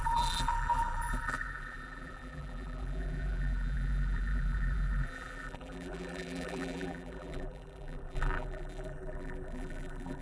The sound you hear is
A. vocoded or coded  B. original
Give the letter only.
A